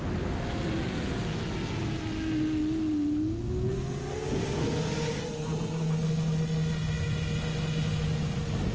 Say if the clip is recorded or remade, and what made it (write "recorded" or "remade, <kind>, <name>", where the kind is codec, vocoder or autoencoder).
recorded